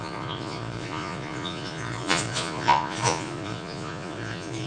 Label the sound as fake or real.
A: fake